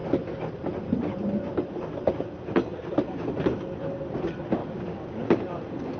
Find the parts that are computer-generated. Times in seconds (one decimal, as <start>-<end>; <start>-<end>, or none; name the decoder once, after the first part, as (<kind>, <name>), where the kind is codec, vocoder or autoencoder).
4.6-5.4 (codec, DAC)